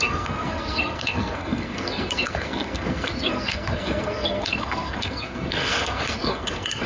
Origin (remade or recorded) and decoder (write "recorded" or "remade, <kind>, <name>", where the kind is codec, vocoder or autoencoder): remade, codec, SNAC